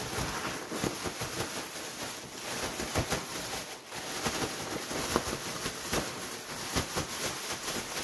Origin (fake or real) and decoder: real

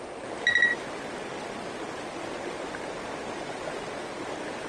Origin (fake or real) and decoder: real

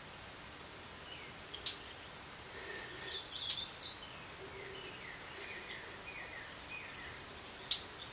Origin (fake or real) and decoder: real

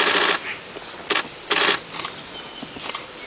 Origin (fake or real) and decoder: real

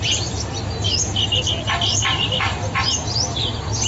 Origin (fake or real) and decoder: real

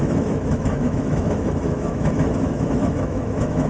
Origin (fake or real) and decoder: fake, autoencoder, DAC-VAE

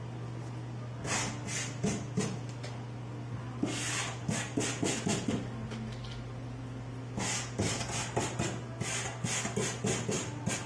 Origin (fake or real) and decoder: real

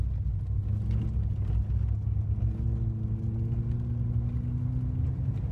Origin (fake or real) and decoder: real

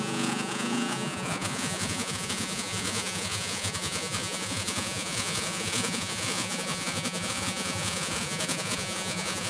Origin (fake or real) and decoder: fake, vocoder, Vocos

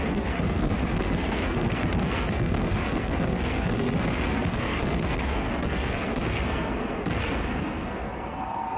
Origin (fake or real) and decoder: fake, codec, SNAC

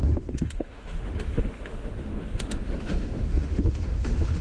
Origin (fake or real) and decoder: fake, autoencoder, DAC-VAE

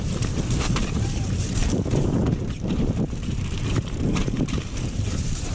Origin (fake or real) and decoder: fake, vocoder, BigVGAN v2